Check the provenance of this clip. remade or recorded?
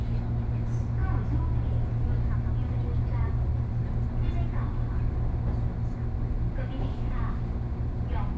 recorded